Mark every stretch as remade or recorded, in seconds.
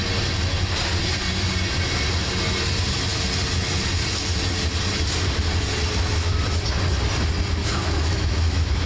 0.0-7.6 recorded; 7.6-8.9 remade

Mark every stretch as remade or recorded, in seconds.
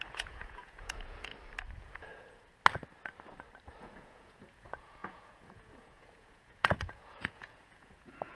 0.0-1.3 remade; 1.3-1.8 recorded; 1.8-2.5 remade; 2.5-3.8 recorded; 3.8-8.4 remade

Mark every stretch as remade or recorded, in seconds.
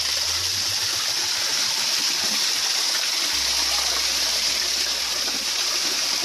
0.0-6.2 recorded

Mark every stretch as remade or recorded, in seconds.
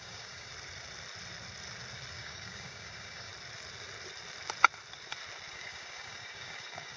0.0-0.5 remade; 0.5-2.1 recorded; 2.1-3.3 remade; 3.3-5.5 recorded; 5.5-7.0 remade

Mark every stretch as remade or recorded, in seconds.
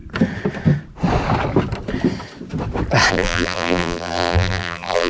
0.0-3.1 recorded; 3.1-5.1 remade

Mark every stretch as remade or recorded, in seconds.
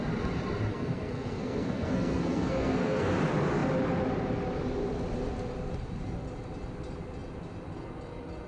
0.0-0.7 recorded; 0.7-3.1 remade; 3.1-8.5 recorded